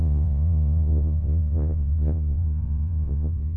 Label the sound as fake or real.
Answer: fake